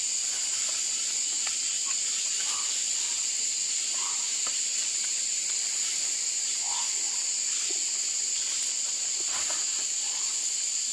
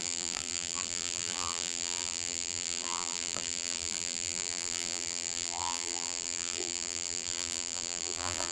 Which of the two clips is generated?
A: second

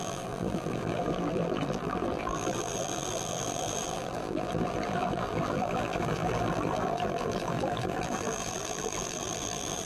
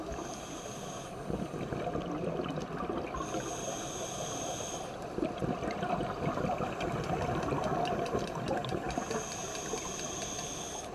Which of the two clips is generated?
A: first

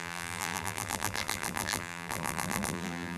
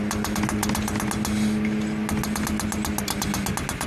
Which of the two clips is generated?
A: first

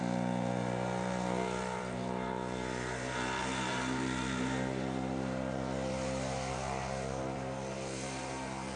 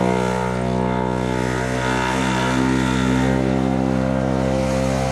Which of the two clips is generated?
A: first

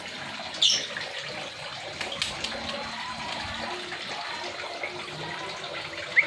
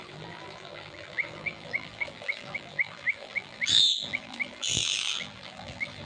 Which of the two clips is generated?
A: second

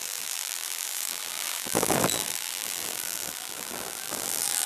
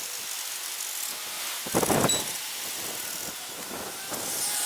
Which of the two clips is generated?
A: first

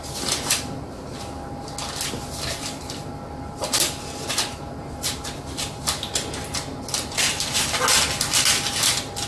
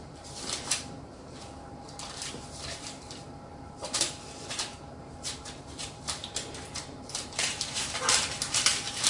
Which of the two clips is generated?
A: second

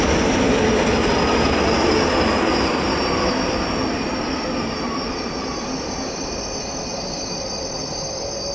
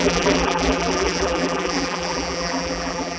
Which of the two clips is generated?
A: second